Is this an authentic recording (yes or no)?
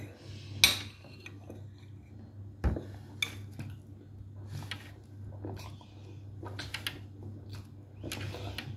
yes